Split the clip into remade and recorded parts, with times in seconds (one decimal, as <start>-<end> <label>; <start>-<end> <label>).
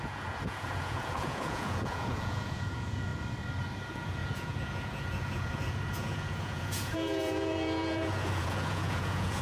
0.0-3.1 remade; 3.1-3.8 recorded; 3.8-9.4 remade